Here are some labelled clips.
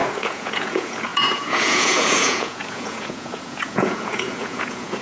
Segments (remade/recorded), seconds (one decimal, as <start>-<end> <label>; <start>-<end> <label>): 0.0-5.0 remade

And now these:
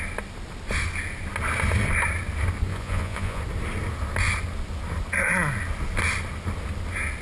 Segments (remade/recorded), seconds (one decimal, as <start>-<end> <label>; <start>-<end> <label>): 0.0-2.7 recorded; 2.7-3.4 remade; 3.4-7.2 recorded

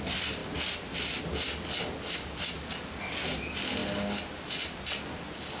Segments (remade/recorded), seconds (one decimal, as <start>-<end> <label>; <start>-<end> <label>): 0.0-5.6 recorded

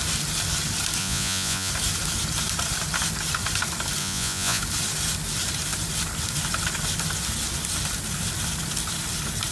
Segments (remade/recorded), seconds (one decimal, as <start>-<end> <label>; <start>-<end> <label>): 0.0-1.0 recorded; 1.0-1.7 remade; 1.7-4.0 recorded; 4.0-4.6 remade; 4.6-9.5 recorded